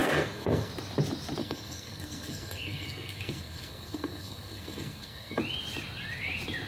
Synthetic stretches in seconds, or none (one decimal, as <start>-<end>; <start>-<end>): 0.0-0.7; 1.4-5.4